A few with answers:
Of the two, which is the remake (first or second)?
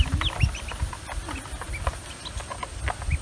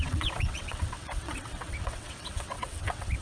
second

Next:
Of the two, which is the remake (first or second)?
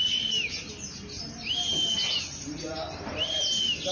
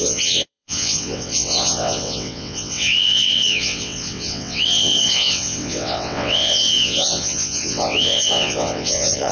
second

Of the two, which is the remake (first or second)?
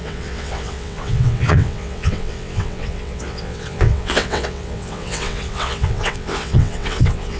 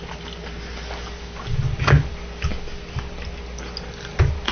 first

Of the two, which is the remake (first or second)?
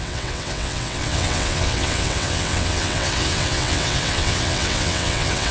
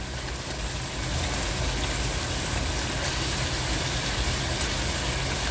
first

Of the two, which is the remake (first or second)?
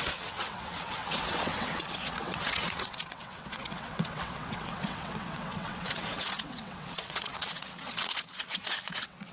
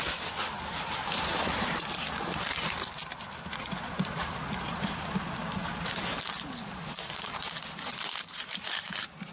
first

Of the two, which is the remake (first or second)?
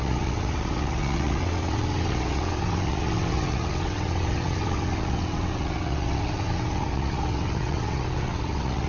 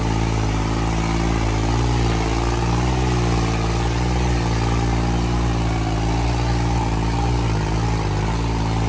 first